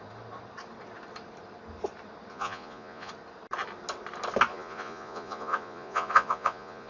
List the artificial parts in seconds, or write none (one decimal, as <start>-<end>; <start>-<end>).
2.3-3.1; 4.5-6.9